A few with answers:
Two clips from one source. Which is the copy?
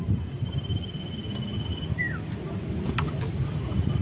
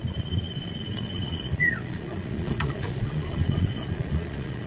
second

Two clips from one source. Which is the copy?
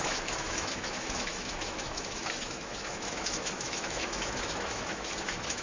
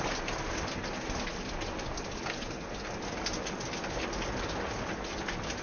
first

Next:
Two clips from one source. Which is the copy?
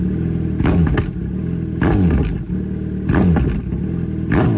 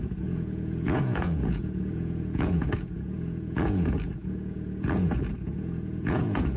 second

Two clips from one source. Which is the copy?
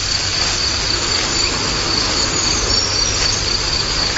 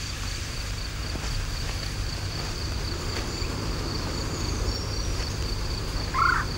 second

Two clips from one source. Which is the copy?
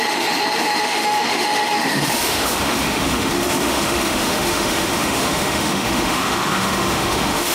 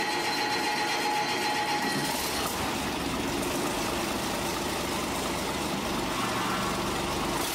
first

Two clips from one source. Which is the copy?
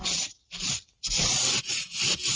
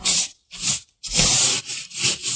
first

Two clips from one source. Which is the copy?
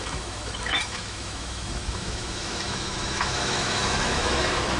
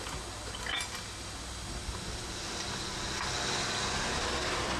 first